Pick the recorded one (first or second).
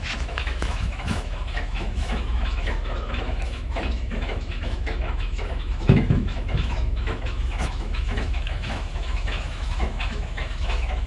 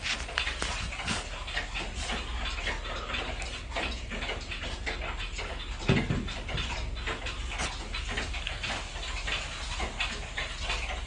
second